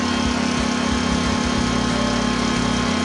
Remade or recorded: recorded